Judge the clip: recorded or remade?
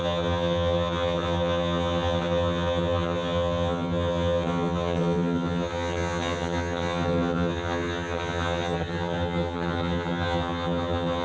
remade